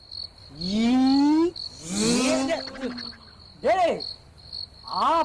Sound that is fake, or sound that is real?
real